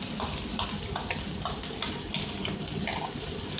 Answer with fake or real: real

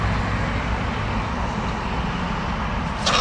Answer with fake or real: real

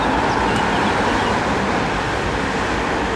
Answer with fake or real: real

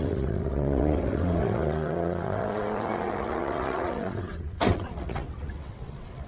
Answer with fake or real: fake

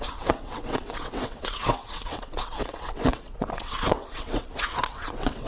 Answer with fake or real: fake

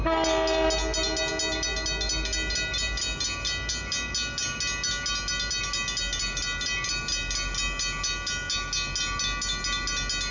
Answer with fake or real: real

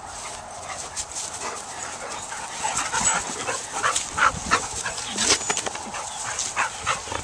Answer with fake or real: real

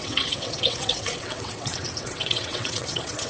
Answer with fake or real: fake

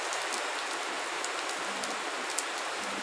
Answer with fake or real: real